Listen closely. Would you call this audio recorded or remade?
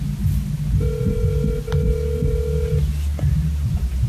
recorded